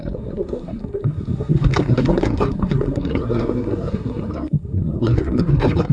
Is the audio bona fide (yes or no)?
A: no